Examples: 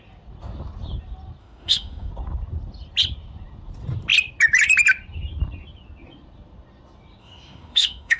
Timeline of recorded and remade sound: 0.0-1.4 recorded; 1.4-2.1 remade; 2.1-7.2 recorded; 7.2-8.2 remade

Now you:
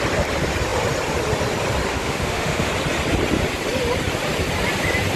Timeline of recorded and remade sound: 0.0-1.9 recorded; 1.9-2.7 remade; 2.7-5.2 recorded

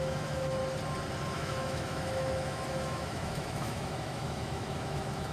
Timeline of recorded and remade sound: 0.0-0.6 remade; 0.6-1.3 recorded; 1.3-5.3 remade

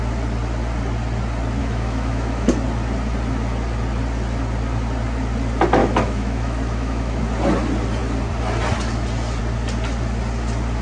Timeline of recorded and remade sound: 0.0-1.6 recorded; 1.6-2.5 remade; 2.5-5.8 recorded; 5.8-7.2 remade; 7.2-10.8 recorded

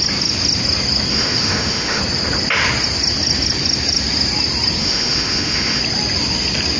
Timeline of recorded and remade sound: 0.0-1.1 recorded; 1.1-2.0 remade; 2.0-4.8 recorded; 4.8-5.8 remade; 5.8-6.8 recorded

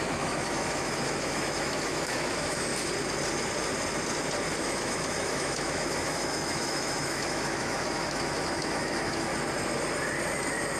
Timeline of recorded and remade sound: 0.0-2.7 remade; 2.7-4.6 recorded; 4.6-9.3 remade; 9.3-10.8 recorded

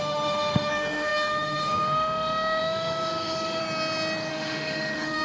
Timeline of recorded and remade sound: 0.0-3.6 remade; 3.6-4.3 recorded; 4.3-5.2 remade

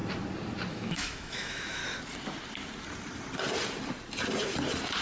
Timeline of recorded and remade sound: 0.0-0.7 recorded; 0.7-1.8 remade; 1.8-5.0 recorded